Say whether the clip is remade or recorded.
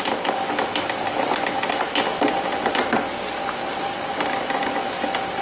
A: recorded